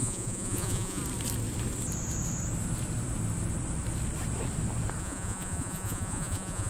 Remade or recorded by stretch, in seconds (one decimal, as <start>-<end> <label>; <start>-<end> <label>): 0.0-1.0 remade; 1.0-5.0 recorded; 5.0-6.7 remade